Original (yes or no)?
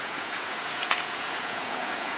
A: no